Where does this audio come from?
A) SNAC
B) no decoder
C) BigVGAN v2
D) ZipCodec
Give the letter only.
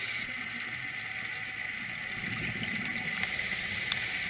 B